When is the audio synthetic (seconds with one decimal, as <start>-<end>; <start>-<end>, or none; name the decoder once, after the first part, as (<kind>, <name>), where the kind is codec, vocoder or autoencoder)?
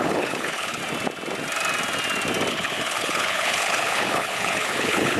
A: 0.0-0.8 (codec, HILCodec); 2.5-5.2